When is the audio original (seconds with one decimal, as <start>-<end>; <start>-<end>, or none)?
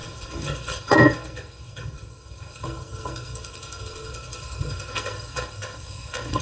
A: none